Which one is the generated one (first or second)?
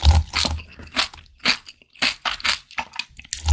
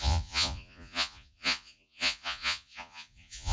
second